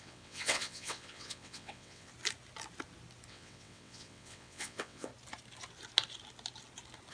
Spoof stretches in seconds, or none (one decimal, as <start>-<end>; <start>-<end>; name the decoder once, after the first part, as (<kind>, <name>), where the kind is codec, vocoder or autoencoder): 0.0-2.1 (vocoder, WaveNeXt); 3.3-5.1